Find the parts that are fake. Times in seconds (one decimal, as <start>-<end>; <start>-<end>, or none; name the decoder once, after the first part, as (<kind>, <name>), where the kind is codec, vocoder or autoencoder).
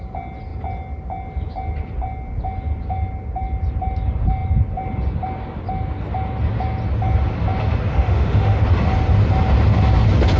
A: 7.9-8.6 (autoencoder, DAC-VAE)